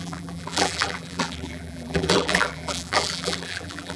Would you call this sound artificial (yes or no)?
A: yes